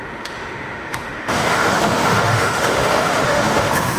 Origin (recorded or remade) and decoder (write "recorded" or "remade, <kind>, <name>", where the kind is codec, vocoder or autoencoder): remade, autoencoder, DAC-VAE